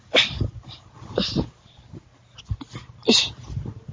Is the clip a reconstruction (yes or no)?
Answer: no